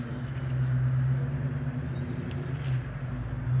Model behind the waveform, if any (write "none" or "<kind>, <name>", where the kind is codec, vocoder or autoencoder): none